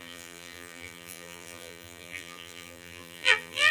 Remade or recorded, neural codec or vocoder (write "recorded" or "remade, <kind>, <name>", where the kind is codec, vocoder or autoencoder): remade, vocoder, BigVGAN v2